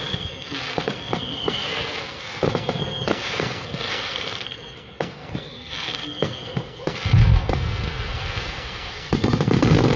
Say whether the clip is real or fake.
fake